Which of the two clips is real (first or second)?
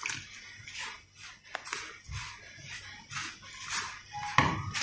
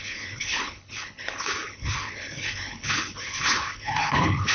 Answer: first